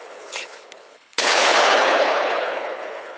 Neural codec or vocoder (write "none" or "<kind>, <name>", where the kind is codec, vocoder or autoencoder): codec, HILCodec